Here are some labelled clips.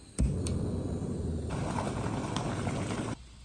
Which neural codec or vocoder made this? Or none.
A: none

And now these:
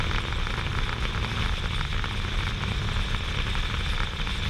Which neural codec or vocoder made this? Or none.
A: none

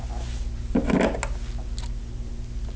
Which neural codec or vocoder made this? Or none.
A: none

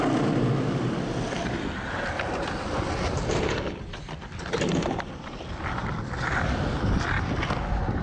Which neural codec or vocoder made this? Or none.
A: none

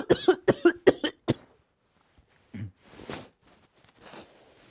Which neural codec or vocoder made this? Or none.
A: none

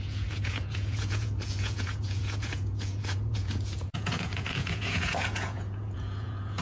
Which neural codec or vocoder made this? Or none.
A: vocoder, Vocos